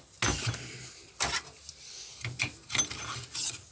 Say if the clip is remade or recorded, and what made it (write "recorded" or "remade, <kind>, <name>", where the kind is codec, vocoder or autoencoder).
recorded